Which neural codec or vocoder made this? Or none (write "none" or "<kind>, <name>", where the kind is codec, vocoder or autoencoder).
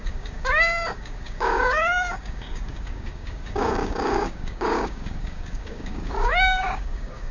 codec, DAC